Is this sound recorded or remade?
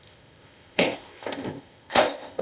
remade